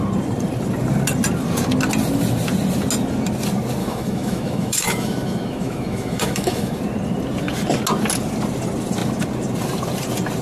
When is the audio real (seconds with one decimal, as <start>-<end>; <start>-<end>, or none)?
0.0-3.8; 6.8-10.4